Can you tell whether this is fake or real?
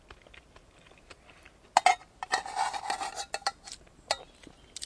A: real